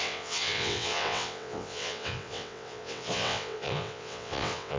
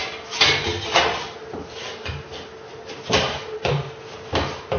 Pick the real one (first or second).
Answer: second